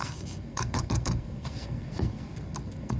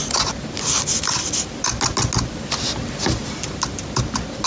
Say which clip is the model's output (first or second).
first